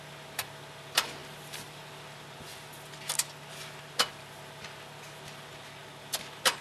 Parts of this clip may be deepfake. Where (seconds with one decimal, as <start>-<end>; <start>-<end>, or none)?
none